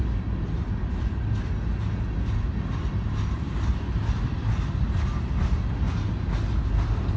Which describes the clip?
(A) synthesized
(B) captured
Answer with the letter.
B